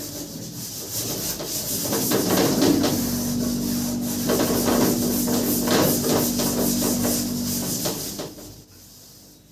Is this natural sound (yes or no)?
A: yes